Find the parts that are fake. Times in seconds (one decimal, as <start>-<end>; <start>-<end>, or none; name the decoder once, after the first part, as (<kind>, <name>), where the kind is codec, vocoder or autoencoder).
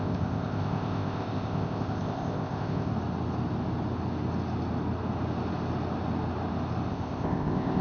0.0-2.9 (codec, ZipCodec); 6.9-7.8